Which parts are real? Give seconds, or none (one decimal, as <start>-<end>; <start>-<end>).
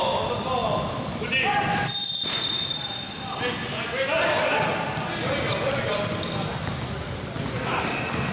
0.0-8.3